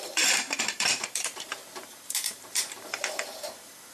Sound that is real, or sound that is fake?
fake